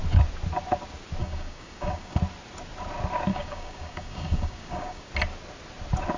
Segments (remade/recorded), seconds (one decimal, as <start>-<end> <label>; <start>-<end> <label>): 0.0-1.2 recorded; 1.2-2.2 remade; 2.2-3.3 recorded; 3.3-5.1 remade; 5.1-6.2 recorded

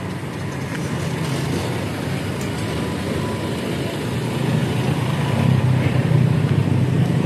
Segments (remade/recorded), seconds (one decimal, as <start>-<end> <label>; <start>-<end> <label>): 0.0-7.3 recorded

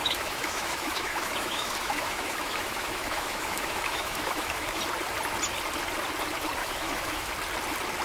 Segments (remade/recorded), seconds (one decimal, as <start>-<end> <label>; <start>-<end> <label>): 0.0-4.8 remade; 4.8-6.6 recorded; 6.6-7.3 remade; 7.3-8.0 recorded

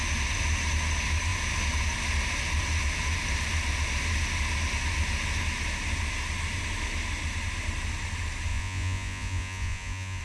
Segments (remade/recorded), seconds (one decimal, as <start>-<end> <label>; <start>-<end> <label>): 0.0-8.5 recorded; 8.5-10.2 remade

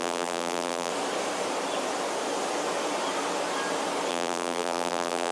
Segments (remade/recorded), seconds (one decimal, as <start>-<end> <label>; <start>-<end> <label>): 0.0-0.9 remade; 0.9-4.1 recorded; 4.1-5.3 remade

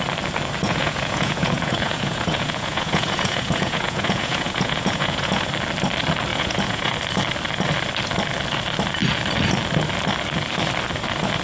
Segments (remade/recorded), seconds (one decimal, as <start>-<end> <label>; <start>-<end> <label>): 0.0-0.6 recorded; 0.6-5.5 remade; 5.5-6.3 recorded; 6.3-6.9 remade; 6.9-11.4 recorded

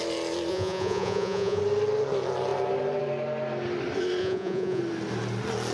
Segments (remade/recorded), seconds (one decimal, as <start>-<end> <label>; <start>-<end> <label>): 0.0-0.5 recorded; 0.5-1.6 remade; 1.6-4.2 recorded; 4.2-4.8 remade; 4.8-5.7 recorded

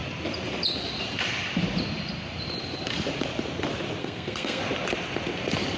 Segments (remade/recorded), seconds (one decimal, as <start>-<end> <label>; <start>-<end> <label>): 0.0-4.0 recorded; 4.0-4.6 remade; 4.6-5.8 recorded